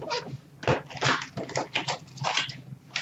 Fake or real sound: real